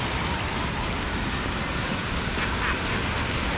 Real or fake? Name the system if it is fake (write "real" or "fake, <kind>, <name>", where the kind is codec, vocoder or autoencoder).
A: real